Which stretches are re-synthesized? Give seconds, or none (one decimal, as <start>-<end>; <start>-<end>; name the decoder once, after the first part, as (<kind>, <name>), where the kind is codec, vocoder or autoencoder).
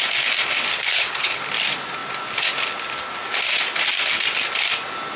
0.7-1.4 (codec, HILCodec)